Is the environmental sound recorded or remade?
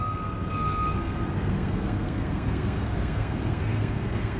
remade